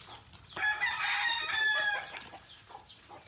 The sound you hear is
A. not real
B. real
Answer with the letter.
B